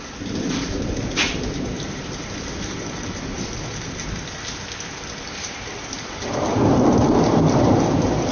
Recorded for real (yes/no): no